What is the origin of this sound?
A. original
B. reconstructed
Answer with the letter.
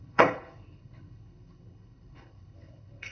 B